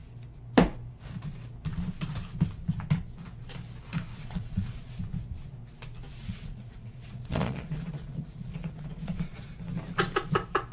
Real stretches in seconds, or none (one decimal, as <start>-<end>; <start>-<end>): 0.0-4.1; 5.0-6.2; 9.5-10.7

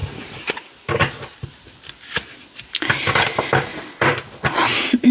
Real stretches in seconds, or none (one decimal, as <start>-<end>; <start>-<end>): 0.0-3.7

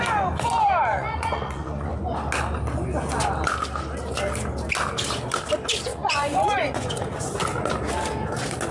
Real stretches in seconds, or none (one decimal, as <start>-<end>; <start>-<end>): 0.0-0.9; 1.9-5.9; 7.4-8.7

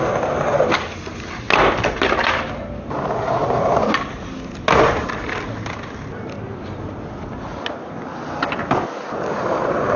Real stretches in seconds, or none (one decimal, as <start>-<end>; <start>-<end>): 0.0-10.0

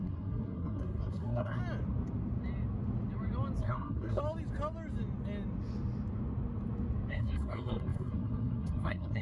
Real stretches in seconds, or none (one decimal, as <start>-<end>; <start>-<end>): 1.6-3.6; 4.2-7.1

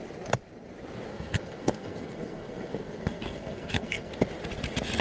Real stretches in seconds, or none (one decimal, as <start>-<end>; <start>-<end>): 0.0-1.1; 4.1-5.0

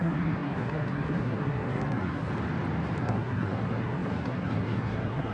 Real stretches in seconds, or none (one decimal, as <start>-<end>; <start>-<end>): 2.3-3.0

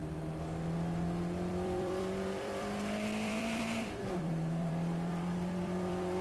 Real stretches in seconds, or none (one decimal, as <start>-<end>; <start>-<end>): 0.0-1.5